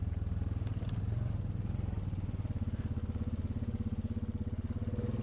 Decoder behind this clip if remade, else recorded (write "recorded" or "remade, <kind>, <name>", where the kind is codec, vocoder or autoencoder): recorded